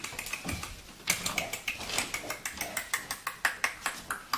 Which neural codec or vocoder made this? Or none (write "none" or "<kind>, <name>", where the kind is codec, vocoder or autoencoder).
none